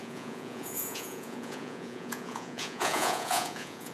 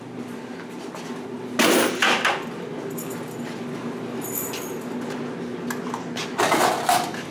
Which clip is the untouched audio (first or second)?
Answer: second